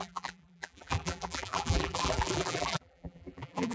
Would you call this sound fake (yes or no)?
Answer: yes